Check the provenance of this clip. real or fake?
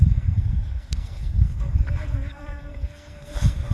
fake